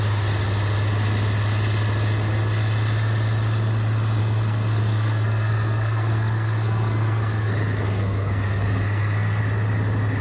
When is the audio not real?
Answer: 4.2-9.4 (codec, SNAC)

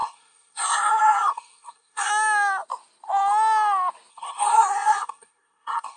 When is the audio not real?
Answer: 0.0-2.1 (codec, SNAC); 4.1-6.0

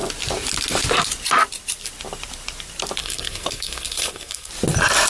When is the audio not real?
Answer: 3.0-4.5 (codec, SNAC)

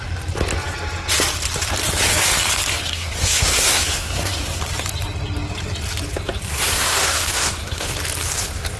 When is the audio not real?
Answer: 2.7-4.6 (codec, SNAC); 6.5-7.9

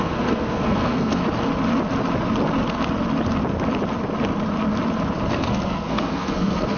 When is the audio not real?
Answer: 0.0-1.2 (codec, SNAC); 5.3-6.8